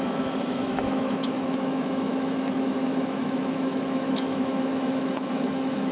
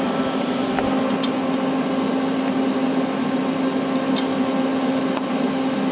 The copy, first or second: first